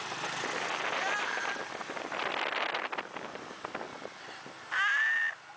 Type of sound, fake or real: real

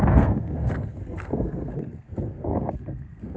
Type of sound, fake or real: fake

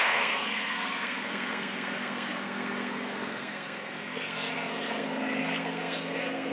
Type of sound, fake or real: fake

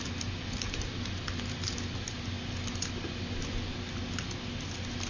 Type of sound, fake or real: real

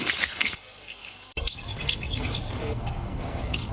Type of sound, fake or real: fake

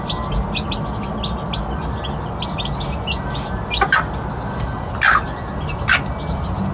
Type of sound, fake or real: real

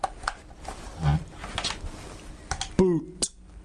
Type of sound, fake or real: real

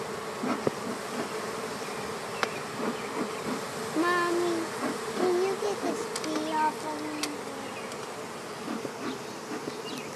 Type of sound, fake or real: real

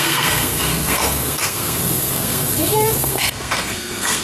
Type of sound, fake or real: fake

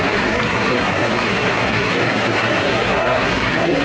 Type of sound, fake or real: fake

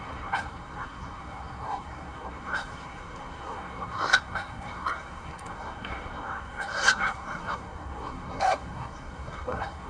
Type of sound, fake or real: fake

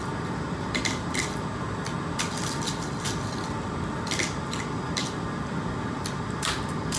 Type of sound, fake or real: real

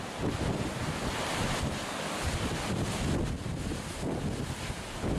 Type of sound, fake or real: real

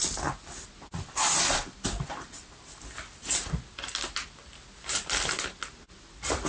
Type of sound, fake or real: real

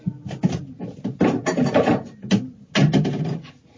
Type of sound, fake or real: real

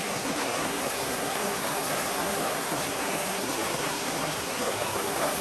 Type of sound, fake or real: fake